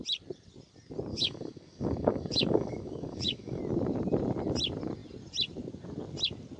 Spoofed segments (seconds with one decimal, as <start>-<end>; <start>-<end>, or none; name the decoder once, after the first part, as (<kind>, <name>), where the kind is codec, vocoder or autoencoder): 1.1-3.6 (codec, DAC)